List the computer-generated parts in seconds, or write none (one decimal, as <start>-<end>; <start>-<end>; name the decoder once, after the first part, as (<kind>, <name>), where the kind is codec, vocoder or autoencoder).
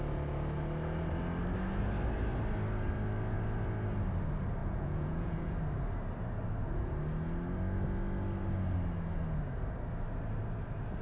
4.6-5.5 (vocoder, Vocos)